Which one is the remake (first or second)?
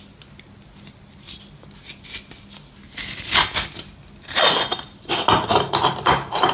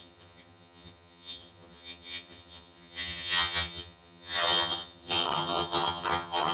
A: second